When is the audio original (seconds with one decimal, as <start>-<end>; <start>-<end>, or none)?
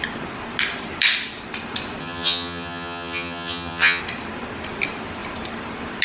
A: 0.0-2.0; 4.0-6.0